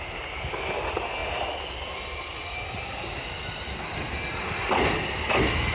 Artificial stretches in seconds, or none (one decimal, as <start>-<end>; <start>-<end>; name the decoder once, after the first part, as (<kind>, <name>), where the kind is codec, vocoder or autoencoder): none